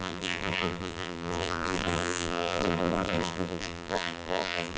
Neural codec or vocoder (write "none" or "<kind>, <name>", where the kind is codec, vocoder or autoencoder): vocoder, BigVGAN v2